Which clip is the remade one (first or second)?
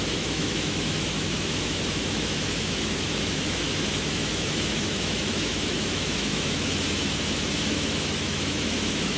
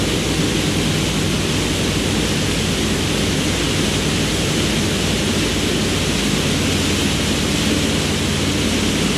first